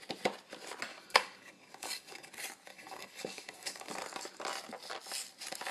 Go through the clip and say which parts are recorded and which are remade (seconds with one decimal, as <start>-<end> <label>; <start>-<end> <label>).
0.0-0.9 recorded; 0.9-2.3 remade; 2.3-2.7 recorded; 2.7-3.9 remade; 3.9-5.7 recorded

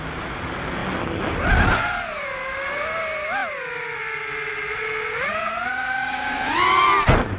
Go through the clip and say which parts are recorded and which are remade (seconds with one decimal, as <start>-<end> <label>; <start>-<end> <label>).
0.0-5.7 recorded; 5.7-6.8 remade; 6.8-7.4 recorded

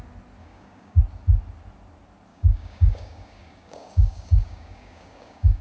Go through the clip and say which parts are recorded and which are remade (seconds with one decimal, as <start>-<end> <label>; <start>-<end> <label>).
0.0-0.4 recorded; 0.4-1.0 remade; 1.0-2.3 recorded; 2.3-5.6 remade

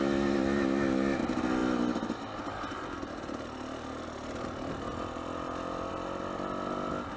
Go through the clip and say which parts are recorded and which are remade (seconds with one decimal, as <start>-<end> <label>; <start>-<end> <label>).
0.0-7.2 recorded

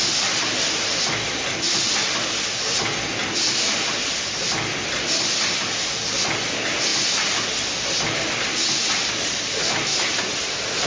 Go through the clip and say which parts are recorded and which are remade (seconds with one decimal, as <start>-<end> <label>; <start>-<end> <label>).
0.0-10.9 recorded